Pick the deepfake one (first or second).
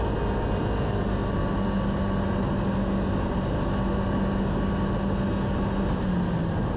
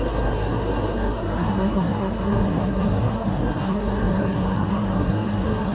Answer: second